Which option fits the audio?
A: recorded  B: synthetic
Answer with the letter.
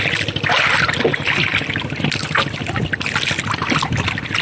A